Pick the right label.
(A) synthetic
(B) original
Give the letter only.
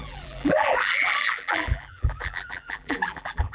A